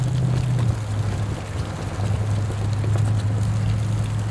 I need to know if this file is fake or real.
real